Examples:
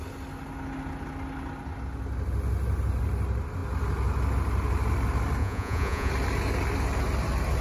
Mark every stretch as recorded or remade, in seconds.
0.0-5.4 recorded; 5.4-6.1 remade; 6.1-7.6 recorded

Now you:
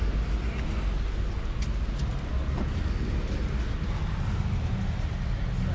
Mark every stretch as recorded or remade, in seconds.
0.0-5.7 recorded

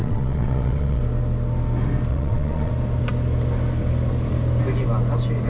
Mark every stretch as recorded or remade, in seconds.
0.0-1.0 remade; 1.0-2.1 recorded; 2.1-2.7 remade; 2.7-5.5 recorded

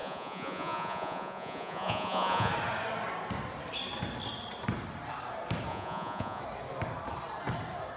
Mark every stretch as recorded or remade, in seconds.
0.0-2.5 remade; 2.5-5.7 recorded; 5.7-6.4 remade; 6.4-8.0 recorded

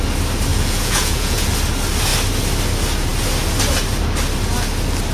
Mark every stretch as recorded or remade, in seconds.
0.0-0.5 recorded; 0.5-1.5 remade; 1.5-5.1 recorded